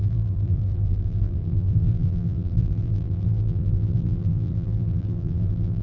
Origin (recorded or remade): remade